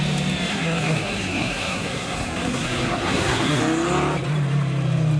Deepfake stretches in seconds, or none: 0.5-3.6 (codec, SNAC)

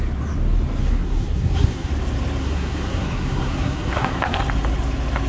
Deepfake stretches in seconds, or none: 0.8-1.9 (codec, SNAC); 2.4-4.4

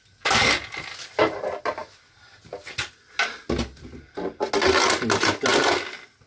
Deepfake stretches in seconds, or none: none

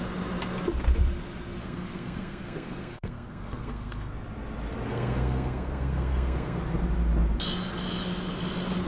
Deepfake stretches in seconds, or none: 1.6-4.1 (codec, SNAC); 4.9-6.6

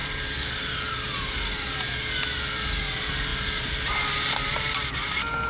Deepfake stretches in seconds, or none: none

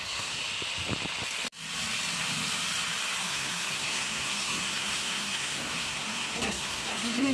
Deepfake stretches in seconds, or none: 0.0-0.4 (codec, SNAC); 3.2-7.3